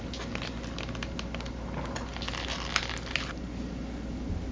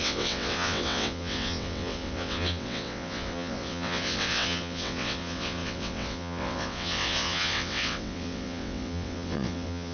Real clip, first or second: first